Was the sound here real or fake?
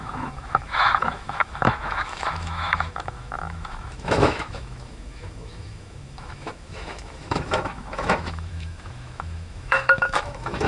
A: fake